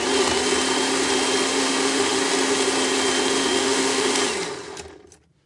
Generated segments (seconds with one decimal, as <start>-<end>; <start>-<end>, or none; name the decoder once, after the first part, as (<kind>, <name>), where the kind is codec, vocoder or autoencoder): 1.5-2.2 (autoencoder, DAC-VAE); 3.4-4.1